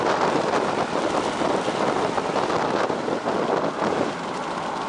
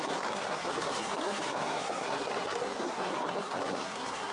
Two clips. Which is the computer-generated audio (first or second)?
second